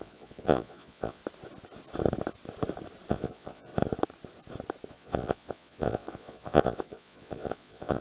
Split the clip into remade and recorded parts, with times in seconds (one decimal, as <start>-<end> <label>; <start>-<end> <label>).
0.0-1.2 remade; 1.2-3.1 recorded; 3.1-3.7 remade; 3.7-4.9 recorded; 4.9-8.0 remade